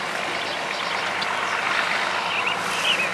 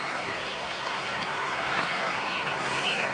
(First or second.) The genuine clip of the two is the first